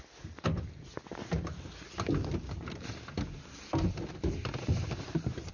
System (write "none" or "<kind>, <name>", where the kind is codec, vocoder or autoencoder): none